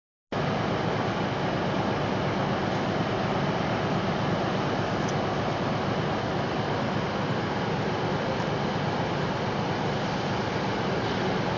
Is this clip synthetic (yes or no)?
no